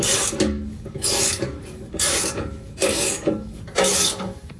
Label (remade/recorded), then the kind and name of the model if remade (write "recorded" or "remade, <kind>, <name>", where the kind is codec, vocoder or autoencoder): remade, codec, DAC